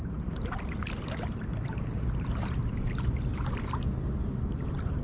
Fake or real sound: fake